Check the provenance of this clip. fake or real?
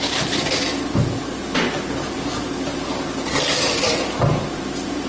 real